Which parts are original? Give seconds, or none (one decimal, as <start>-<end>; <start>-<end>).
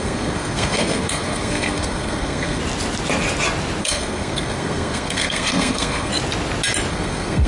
2.6-3.8; 6.1-6.9